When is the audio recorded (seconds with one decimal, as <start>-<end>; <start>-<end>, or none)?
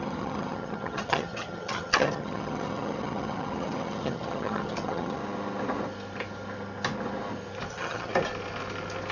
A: 5.2-7.7; 8.1-9.1